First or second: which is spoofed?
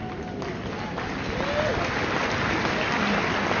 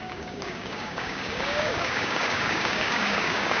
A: second